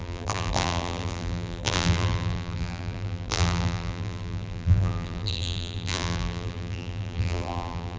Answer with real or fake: fake